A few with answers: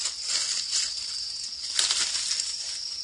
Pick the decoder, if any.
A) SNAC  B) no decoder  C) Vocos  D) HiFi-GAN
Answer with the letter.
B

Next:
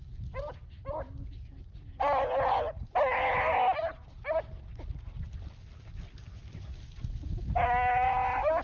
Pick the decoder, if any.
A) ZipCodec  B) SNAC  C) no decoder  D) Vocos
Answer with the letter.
C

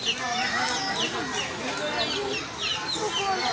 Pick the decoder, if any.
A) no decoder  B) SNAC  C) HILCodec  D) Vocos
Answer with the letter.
A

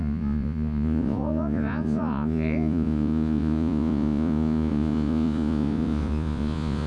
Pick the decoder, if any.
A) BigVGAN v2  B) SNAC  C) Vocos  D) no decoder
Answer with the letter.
C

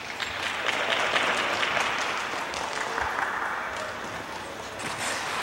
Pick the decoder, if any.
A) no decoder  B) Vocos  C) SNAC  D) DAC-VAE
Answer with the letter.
A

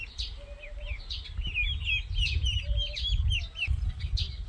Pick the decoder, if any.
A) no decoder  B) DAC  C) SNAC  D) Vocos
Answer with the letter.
A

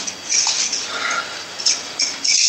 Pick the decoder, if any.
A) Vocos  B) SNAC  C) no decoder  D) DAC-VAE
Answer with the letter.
C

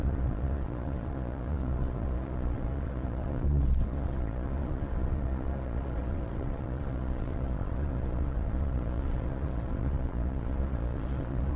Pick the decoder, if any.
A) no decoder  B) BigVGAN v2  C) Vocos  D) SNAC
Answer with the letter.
C